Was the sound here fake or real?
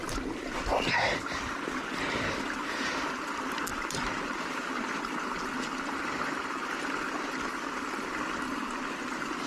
real